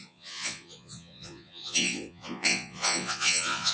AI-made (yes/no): yes